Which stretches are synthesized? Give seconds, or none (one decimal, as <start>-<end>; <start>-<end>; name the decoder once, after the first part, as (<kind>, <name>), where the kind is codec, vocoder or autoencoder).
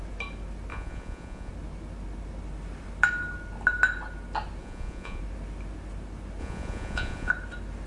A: 0.7-1.5 (vocoder, Vocos); 4.6-5.2; 6.4-7.3